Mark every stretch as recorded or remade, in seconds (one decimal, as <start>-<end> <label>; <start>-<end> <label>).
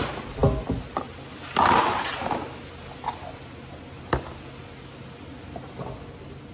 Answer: 0.0-6.5 recorded